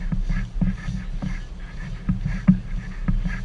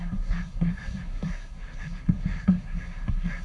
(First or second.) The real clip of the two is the first